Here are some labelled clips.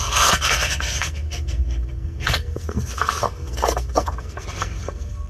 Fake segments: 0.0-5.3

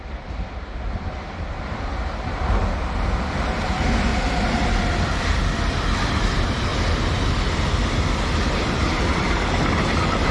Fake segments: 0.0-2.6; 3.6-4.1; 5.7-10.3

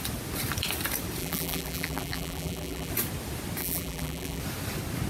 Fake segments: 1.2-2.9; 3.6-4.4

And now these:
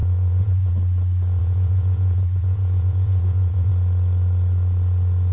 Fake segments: 0.0-0.7; 1.4-3.7

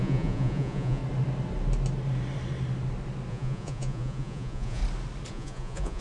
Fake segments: 0.0-1.0; 3.3-4.8; 5.3-6.0

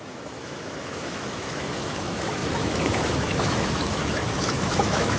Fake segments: 0.0-5.2